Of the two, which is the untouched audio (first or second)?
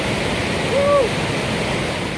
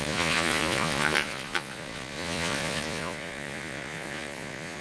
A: first